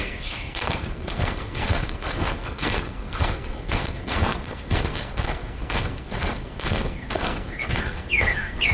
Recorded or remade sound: remade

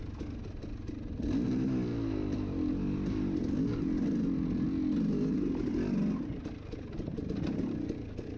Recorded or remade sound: recorded